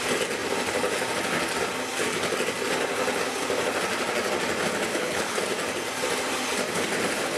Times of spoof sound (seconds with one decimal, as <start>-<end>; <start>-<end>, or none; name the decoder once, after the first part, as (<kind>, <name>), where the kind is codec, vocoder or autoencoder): 4.9-5.4 (codec, HILCodec)